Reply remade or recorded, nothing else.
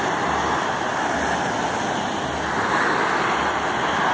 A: recorded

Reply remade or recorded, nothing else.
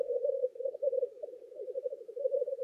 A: remade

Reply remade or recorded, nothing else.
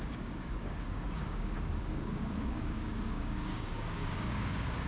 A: remade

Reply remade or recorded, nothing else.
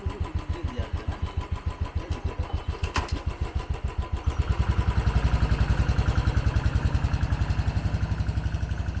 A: recorded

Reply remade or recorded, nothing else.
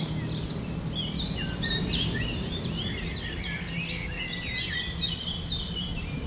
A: recorded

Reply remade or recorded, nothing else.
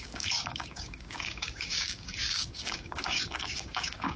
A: remade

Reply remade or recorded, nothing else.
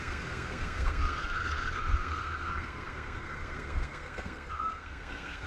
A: remade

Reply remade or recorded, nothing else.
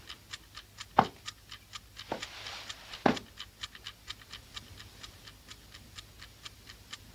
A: recorded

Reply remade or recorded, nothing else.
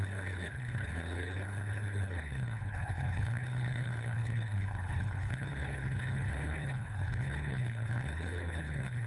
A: remade